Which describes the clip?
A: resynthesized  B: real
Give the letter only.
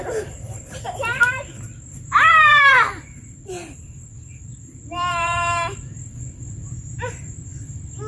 A